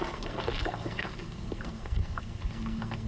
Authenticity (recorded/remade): remade